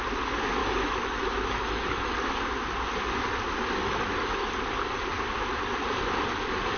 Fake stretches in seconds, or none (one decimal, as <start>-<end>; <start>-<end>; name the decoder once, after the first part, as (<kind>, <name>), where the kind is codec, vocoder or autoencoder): 0.6-2.1 (autoencoder, DAC-VAE); 3.8-4.5